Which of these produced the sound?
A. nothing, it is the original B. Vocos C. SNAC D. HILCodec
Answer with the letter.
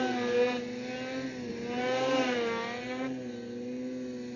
A